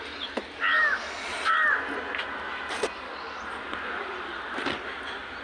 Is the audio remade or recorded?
recorded